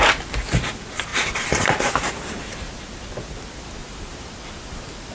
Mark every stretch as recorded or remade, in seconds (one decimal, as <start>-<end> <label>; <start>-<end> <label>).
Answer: 0.0-1.1 recorded; 1.1-2.4 remade; 2.4-3.8 recorded; 3.8-5.1 remade

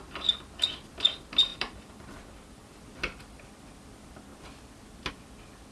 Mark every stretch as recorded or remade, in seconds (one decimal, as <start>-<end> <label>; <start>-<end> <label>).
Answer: 0.0-1.5 recorded; 1.5-2.8 remade; 2.8-5.7 recorded

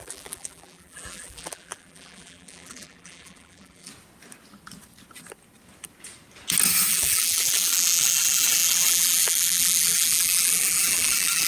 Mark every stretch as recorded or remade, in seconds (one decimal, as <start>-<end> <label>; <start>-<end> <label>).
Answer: 0.0-3.9 remade; 3.9-6.9 recorded; 6.9-11.5 remade

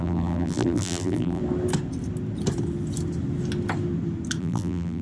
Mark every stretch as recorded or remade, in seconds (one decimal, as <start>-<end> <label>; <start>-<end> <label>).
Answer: 0.0-1.4 remade; 1.4-4.4 recorded; 4.4-5.0 remade

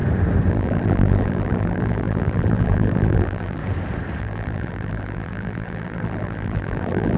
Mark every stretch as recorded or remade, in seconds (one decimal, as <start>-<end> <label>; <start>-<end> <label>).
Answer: 0.0-0.5 recorded; 0.5-3.6 remade; 3.6-4.2 recorded; 4.2-7.2 remade

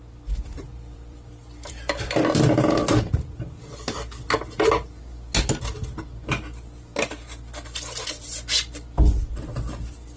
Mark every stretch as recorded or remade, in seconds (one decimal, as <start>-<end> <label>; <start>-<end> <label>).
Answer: 0.0-0.5 recorded; 0.5-2.0 remade; 2.0-10.2 recorded

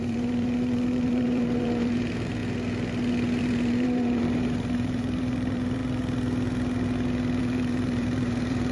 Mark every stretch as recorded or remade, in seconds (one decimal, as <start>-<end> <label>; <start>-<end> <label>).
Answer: 0.0-2.4 remade; 2.4-3.4 recorded; 3.4-5.8 remade; 5.8-7.4 recorded; 7.4-8.7 remade

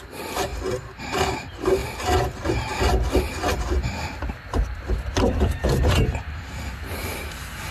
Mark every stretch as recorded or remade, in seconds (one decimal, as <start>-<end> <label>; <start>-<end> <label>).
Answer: 0.0-0.5 remade; 0.5-1.0 recorded; 1.0-1.8 remade; 1.8-5.2 recorded; 5.2-7.7 remade